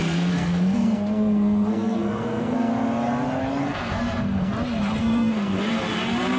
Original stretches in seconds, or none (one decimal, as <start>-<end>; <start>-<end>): 2.7-3.6; 4.5-5.0; 5.7-6.4